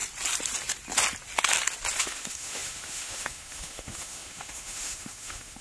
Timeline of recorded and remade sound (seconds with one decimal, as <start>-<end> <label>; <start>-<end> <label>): 0.0-2.0 recorded; 2.0-5.6 remade

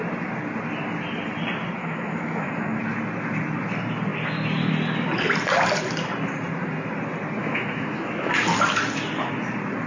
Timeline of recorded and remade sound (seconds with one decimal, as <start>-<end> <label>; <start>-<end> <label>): 0.0-1.8 recorded; 1.8-2.8 remade; 2.8-7.4 recorded; 7.4-8.3 remade; 8.3-9.9 recorded

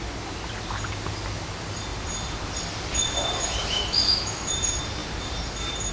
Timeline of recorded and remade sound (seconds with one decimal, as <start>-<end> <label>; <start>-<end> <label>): 0.0-3.6 recorded; 3.6-4.5 remade; 4.5-5.9 recorded

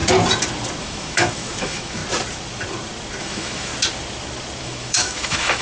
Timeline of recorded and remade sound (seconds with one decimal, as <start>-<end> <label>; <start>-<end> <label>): 0.0-0.8 recorded; 0.8-2.0 remade; 2.0-3.2 recorded; 3.2-3.7 remade; 3.7-4.6 recorded; 4.6-5.6 remade

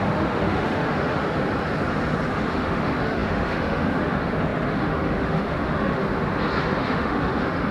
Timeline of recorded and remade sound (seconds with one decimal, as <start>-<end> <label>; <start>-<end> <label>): 0.0-1.2 remade; 1.2-2.3 recorded; 2.3-6.0 remade; 6.0-6.6 recorded; 6.6-7.7 remade

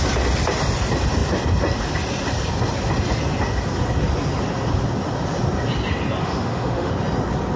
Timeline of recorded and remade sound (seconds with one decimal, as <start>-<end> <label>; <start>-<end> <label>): 0.0-6.2 recorded; 6.2-6.9 remade; 6.9-7.6 recorded